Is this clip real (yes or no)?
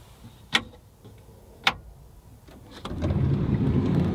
yes